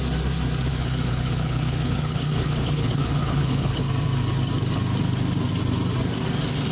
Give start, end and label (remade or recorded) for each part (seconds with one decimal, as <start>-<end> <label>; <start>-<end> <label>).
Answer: 0.0-0.7 recorded; 0.7-3.9 remade; 3.9-6.7 recorded